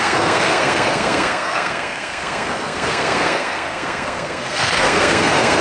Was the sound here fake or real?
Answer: fake